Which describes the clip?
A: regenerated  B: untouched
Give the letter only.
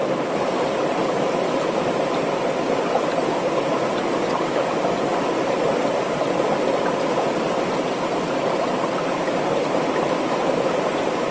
B